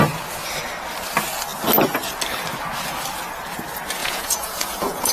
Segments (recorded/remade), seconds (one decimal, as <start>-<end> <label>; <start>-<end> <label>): 0.0-4.0 recorded; 4.0-5.1 remade

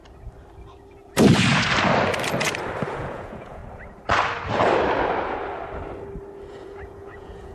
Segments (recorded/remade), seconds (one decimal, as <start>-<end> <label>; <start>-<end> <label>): 0.0-2.9 recorded; 2.9-3.6 remade; 3.6-6.5 recorded; 6.5-7.5 remade

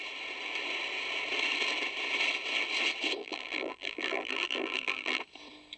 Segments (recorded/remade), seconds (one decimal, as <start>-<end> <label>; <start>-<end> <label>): 0.0-3.2 recorded; 3.2-5.2 remade; 5.2-5.8 recorded

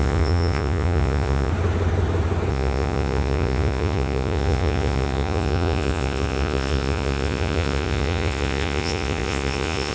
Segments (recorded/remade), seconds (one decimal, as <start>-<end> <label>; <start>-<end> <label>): 0.0-1.5 remade; 1.5-2.5 recorded; 2.5-9.9 remade

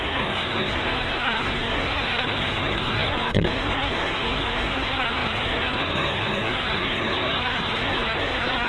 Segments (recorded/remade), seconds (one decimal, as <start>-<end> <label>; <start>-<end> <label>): 0.0-8.7 remade

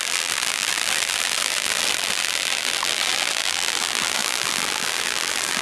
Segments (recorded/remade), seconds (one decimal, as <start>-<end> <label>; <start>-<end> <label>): 0.0-5.6 remade